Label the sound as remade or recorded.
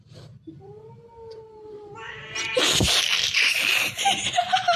remade